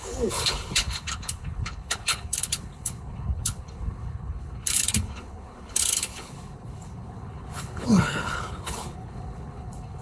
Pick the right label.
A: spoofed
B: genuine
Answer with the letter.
A